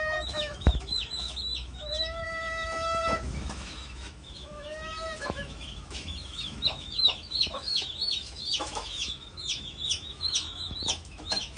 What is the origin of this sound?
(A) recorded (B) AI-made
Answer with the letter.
B